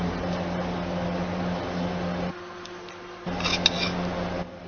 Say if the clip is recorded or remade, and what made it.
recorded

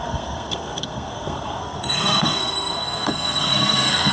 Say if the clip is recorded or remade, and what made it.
remade, codec, SNAC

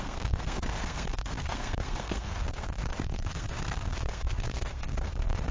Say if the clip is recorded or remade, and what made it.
remade, codec, SNAC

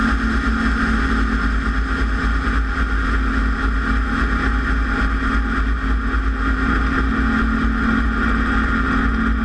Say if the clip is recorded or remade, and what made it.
recorded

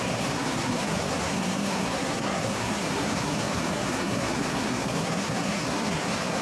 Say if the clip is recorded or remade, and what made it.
remade, codec, SNAC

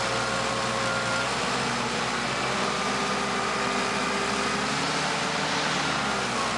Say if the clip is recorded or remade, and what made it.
recorded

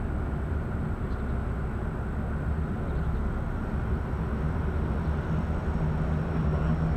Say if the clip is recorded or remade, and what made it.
recorded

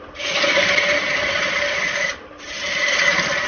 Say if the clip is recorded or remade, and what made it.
recorded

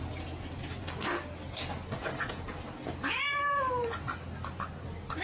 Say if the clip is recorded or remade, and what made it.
recorded